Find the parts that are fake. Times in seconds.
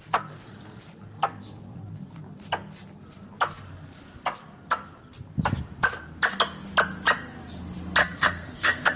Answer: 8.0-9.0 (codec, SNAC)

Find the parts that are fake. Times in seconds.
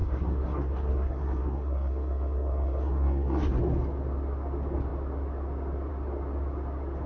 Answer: 0.0-3.6 (codec, SNAC)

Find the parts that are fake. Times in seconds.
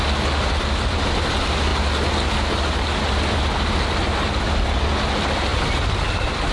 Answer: none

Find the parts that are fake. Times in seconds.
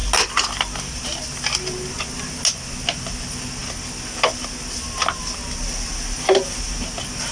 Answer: none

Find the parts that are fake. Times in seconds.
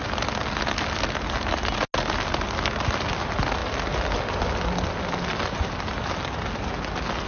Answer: none